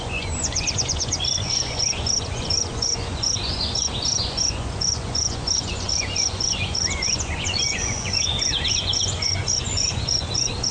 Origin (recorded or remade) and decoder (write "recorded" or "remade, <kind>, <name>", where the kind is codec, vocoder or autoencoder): remade, vocoder, Vocos